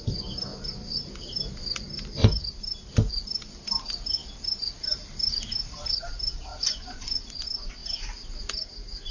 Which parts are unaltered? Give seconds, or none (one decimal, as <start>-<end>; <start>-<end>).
0.0-6.5; 7.2-9.1